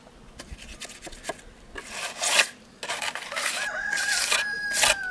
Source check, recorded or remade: recorded